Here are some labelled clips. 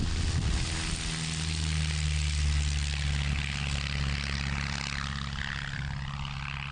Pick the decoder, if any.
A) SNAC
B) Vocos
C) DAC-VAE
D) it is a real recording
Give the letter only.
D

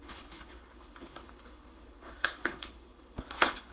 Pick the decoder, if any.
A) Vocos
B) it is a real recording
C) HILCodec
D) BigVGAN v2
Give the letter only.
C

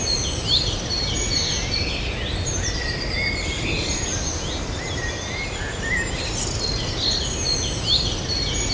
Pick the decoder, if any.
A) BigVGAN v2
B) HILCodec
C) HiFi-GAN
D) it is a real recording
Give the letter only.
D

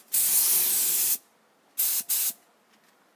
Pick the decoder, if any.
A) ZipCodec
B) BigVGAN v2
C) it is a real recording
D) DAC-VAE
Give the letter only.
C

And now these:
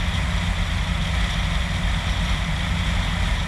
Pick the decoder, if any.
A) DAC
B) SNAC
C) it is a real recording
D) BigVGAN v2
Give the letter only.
C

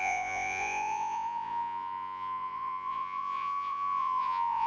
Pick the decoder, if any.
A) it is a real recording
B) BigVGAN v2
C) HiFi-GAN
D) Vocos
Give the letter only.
D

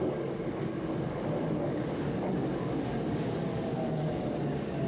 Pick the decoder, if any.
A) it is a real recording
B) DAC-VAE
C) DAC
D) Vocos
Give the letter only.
C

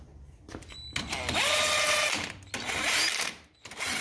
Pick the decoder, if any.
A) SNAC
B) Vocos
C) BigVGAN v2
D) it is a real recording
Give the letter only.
D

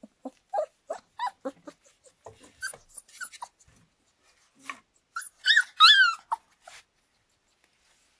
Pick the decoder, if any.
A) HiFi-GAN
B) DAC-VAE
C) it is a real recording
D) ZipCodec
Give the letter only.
C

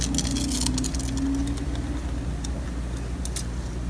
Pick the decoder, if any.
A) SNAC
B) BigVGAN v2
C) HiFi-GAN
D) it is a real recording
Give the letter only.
D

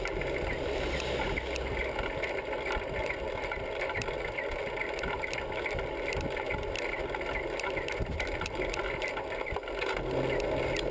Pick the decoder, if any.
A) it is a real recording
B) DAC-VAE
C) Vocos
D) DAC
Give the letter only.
A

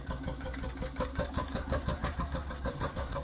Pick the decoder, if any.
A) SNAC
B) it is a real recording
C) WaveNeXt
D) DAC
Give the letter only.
D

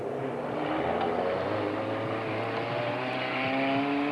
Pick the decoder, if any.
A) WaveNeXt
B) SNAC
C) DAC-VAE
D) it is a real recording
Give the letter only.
D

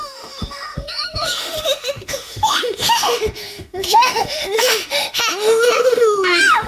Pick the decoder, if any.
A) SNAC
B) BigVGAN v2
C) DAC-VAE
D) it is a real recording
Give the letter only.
C